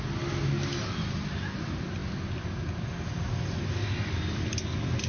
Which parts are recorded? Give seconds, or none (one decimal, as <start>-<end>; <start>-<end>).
0.0-5.1